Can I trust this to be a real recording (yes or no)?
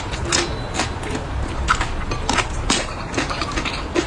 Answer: yes